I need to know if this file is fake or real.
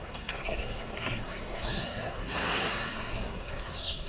fake